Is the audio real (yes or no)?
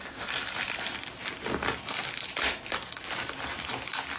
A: yes